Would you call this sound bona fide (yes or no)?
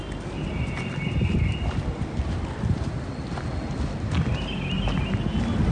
yes